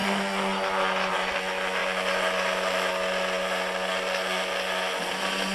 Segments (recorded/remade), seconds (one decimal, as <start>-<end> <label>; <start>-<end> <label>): 0.0-5.5 recorded

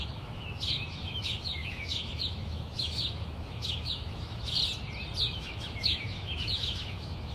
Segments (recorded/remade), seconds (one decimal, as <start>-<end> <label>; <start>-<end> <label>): 0.0-4.6 remade; 4.6-5.2 recorded; 5.2-7.3 remade

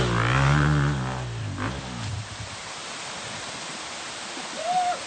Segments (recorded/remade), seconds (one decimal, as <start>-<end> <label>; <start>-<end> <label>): 0.0-5.1 recorded

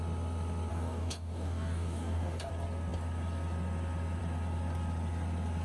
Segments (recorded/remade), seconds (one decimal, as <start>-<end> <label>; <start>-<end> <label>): 0.0-0.7 recorded; 0.7-2.5 remade; 2.5-5.6 recorded

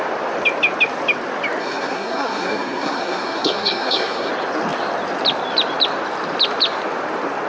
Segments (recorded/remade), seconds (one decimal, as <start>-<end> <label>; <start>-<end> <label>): 0.0-1.6 recorded; 1.6-4.3 remade; 4.3-7.5 recorded

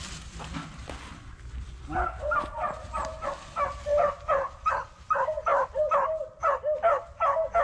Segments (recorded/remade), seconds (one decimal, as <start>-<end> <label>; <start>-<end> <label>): 0.0-3.9 recorded; 3.9-5.0 remade; 5.0-7.6 recorded